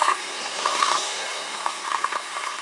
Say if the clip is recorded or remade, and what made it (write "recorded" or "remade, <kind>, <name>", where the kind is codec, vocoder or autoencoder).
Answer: remade, codec, SNAC